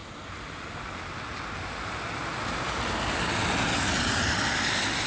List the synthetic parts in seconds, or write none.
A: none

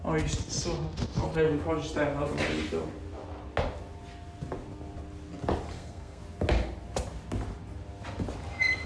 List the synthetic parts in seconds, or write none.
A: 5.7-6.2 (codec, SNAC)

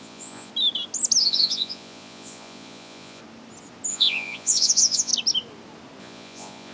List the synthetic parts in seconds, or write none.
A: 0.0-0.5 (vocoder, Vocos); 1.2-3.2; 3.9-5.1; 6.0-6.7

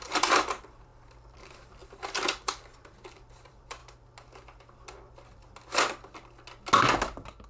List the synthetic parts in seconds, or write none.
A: 0.0-3.8 (vocoder, BigVGAN v2)